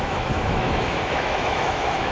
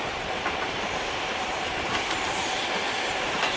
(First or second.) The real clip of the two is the second